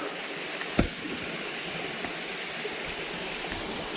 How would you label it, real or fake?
real